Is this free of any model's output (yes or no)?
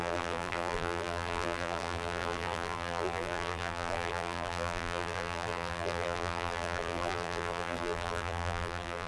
no